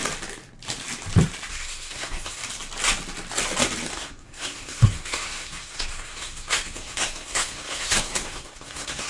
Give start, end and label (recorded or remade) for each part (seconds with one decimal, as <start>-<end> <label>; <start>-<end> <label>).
0.0-1.5 recorded; 1.5-2.4 remade; 2.4-3.9 recorded; 3.9-9.1 remade